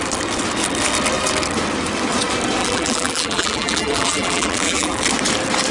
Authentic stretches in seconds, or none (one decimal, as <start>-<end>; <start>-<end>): 0.0-2.6; 5.0-5.7